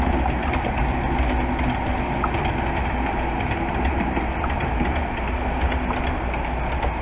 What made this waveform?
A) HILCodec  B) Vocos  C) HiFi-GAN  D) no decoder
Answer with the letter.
D